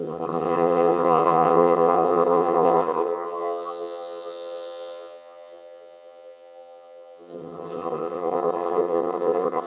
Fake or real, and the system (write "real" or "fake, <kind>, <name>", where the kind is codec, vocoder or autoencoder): fake, vocoder, HiFi-GAN